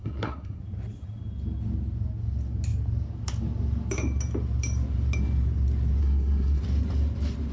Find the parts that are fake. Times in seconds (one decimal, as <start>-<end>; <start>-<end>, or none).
0.0-0.6; 6.0-6.6